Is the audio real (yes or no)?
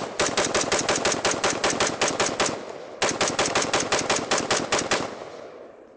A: yes